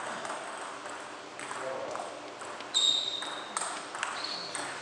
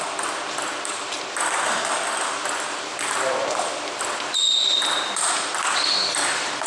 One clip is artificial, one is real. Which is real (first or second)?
first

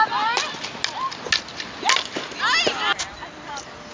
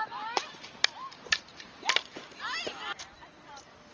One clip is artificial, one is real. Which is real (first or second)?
first